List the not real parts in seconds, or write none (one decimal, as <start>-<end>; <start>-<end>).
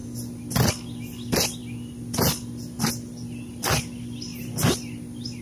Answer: none